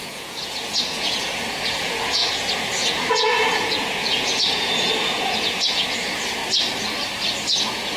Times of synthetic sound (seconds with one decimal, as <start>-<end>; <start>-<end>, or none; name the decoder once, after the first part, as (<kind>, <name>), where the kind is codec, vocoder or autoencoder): 0.0-6.4 (vocoder, Vocos); 7.6-8.0